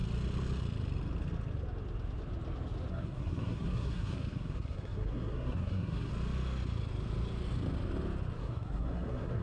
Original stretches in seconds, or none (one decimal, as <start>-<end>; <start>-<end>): 0.0-2.9; 6.1-8.4